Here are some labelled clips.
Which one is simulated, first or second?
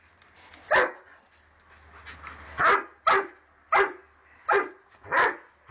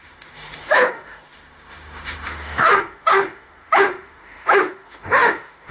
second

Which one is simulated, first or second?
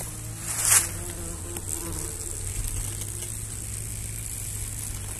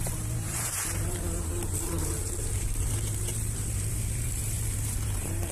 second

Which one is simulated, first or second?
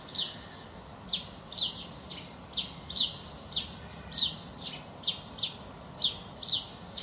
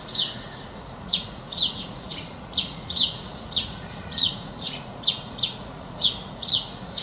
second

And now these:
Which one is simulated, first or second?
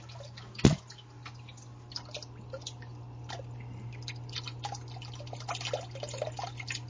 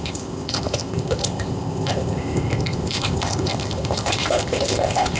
second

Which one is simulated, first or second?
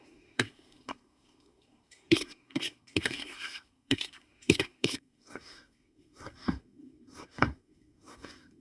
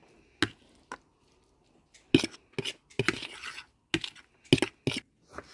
first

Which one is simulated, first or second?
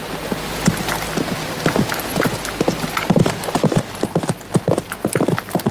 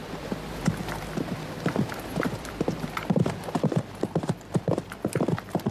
second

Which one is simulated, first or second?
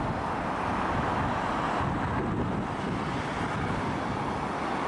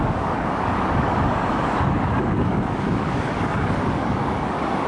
second